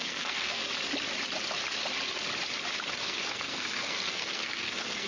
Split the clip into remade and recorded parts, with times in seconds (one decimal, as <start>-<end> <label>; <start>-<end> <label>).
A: 0.0-0.6 remade; 0.6-3.0 recorded; 3.0-5.1 remade